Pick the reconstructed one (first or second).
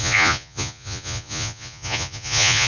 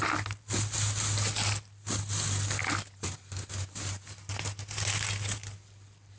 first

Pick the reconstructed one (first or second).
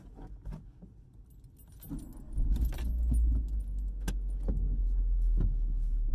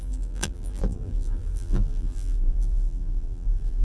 second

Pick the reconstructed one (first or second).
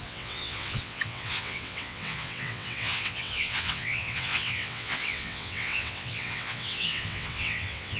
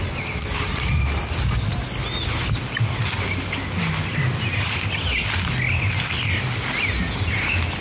first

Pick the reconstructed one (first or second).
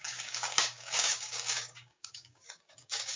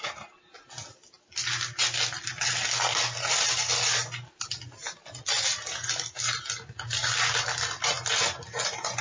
first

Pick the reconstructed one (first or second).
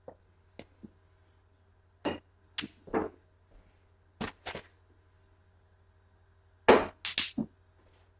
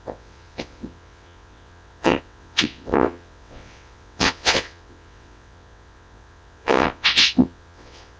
second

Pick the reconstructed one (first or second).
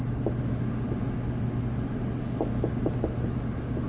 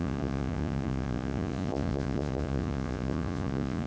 second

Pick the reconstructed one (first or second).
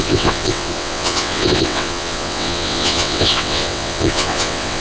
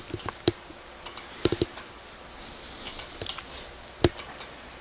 first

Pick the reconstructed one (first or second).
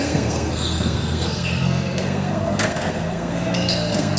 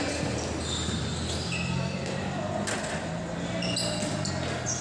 first